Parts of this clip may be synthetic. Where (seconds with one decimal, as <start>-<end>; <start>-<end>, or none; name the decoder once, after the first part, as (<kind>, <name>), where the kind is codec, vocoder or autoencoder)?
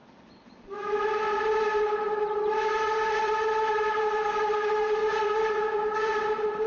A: 0.0-5.0 (vocoder, BigVGAN v2)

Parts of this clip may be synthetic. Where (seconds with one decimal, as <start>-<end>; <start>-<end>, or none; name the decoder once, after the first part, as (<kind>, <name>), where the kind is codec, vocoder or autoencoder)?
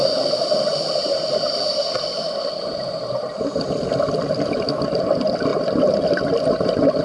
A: 0.7-1.3 (vocoder, BigVGAN v2); 5.5-7.0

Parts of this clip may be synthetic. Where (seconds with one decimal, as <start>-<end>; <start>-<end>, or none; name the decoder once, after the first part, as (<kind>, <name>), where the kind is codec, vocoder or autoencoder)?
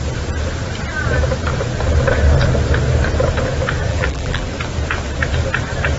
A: 3.9-4.5 (vocoder, BigVGAN v2)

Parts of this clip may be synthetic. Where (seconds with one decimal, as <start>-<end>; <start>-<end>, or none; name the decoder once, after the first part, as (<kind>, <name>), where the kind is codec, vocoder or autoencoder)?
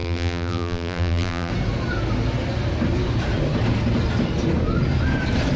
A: 0.0-1.5 (vocoder, BigVGAN v2)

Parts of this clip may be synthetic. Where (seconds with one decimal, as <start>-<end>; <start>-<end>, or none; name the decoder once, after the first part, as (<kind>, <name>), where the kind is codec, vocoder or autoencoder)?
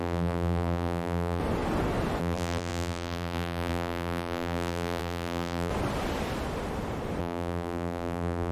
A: 0.0-1.4 (vocoder, BigVGAN v2); 2.2-5.7; 7.2-8.5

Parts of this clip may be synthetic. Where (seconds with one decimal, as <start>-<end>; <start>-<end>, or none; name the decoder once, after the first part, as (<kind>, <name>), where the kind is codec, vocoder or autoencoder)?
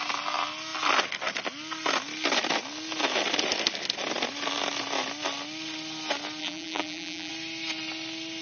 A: 6.4-7.3 (vocoder, BigVGAN v2)